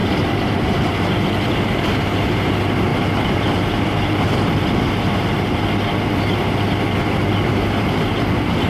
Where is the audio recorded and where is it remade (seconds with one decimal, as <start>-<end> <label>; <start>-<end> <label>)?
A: 0.0-1.1 remade; 1.1-2.9 recorded; 2.9-7.0 remade; 7.0-8.7 recorded